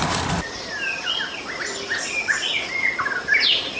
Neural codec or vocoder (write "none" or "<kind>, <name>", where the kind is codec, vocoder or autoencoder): vocoder, BigVGAN v2